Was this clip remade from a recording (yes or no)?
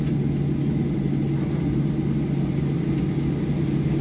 no